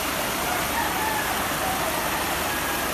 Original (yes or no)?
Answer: yes